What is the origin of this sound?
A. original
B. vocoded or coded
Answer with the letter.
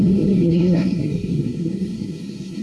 B